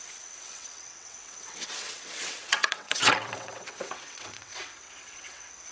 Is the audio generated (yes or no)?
yes